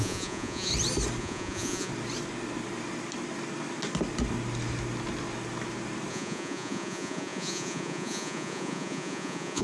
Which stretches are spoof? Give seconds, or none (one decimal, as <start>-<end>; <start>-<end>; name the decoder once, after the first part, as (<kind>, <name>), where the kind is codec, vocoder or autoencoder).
0.0-0.7 (vocoder, Vocos); 1.2-1.9; 6.1-9.6